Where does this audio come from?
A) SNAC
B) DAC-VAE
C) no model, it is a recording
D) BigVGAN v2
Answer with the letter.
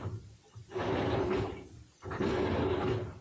C